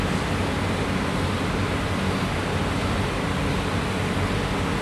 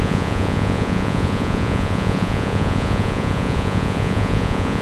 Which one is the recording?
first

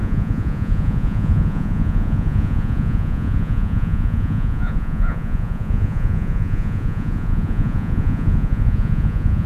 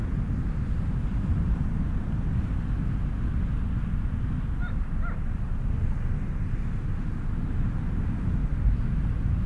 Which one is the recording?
second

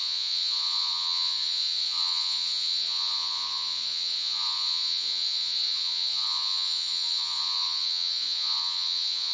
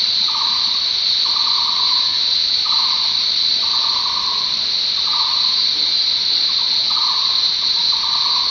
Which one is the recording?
second